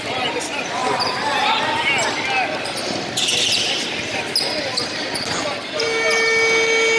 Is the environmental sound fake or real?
real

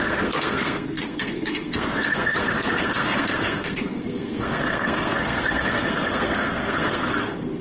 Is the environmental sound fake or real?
fake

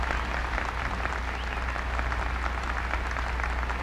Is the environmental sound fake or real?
real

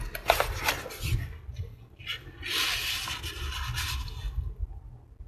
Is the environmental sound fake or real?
real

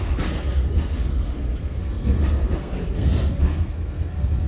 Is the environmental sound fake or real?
fake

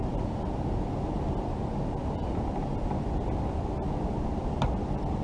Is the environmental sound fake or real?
real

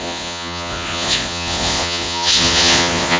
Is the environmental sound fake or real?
fake